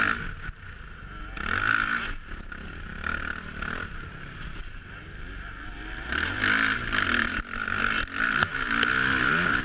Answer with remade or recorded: recorded